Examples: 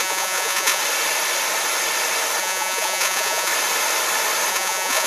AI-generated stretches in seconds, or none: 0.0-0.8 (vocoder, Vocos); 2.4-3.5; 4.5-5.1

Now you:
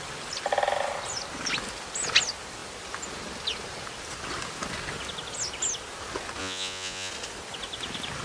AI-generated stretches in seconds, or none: 6.4-7.1 (vocoder, Vocos)

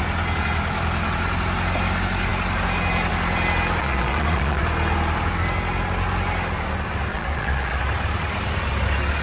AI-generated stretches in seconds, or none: 3.8-4.6 (vocoder, Vocos); 7.1-7.8

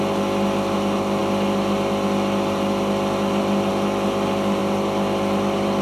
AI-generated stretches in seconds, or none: none

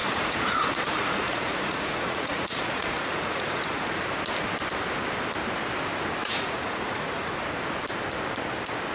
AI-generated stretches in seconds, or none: 0.0-4.0 (vocoder, Vocos); 6.2-7.4

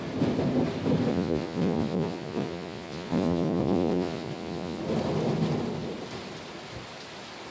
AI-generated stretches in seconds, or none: 1.1-4.8 (vocoder, Vocos)